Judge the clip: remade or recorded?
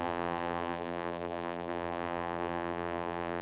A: remade